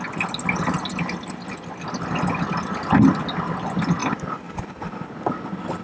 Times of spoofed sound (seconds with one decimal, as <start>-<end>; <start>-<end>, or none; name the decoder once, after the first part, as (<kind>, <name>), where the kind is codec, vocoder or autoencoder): 4.0-4.8 (vocoder, BigVGAN v2)